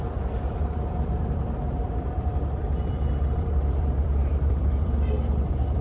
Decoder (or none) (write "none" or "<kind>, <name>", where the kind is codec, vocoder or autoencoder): vocoder, BigVGAN v2